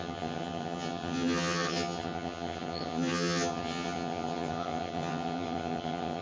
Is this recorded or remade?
remade